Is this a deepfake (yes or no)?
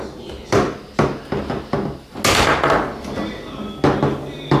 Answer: no